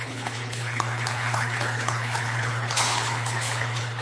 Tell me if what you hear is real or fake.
fake